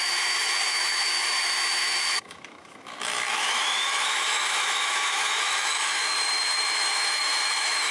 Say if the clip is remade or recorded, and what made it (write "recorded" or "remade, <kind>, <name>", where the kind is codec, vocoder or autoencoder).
remade, autoencoder, DAC-VAE